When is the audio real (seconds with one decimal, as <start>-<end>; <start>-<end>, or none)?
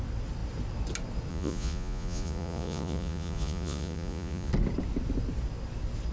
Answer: 0.0-1.3; 4.5-6.1